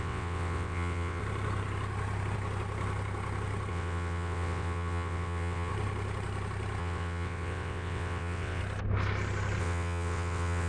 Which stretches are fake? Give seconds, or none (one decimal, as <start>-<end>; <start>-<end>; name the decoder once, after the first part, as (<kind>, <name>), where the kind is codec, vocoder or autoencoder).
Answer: 0.0-1.2 (vocoder, WaveNeXt); 3.7-5.7; 6.8-8.6; 9.6-10.7